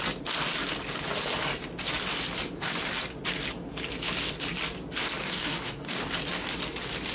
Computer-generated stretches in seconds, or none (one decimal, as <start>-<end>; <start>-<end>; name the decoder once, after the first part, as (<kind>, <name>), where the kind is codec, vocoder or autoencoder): 5.2-6.1 (codec, DAC)